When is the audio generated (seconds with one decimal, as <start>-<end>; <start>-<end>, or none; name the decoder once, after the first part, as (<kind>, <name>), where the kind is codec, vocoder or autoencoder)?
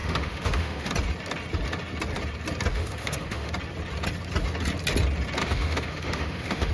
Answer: 0.0-0.9 (autoencoder, DAC-VAE); 2.7-3.5; 5.4-6.7